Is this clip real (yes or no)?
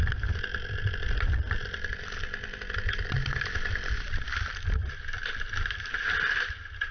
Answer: yes